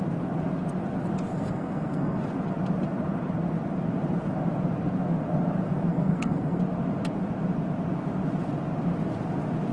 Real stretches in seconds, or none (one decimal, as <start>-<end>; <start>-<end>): 0.0-1.3; 2.2-5.9; 6.6-9.7